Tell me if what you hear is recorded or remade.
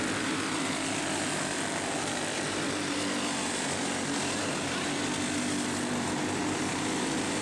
recorded